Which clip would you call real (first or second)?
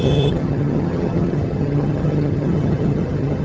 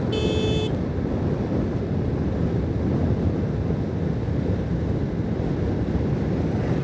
second